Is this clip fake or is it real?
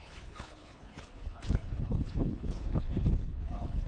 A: fake